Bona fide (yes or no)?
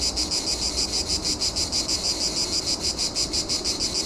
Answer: yes